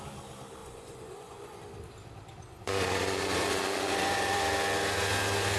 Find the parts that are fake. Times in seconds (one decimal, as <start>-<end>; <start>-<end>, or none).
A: 0.6-1.6; 2.5-4.4